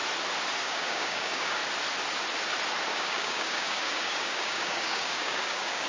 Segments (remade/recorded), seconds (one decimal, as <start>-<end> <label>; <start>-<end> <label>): 0.0-0.6 recorded; 0.6-1.6 remade; 1.6-2.9 recorded; 2.9-5.9 remade